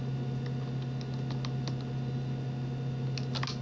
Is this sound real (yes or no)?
yes